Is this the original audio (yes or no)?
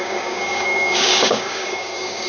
no